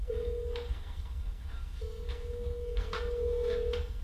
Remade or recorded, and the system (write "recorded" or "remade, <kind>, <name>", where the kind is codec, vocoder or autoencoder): remade, codec, SNAC